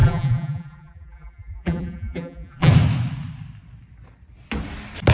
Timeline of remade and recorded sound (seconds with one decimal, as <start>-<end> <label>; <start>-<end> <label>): 0.0-2.7 remade; 2.7-5.1 recorded